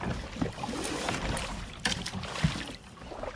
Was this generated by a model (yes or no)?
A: no